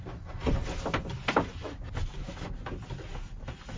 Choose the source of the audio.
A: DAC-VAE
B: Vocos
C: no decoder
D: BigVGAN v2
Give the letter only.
C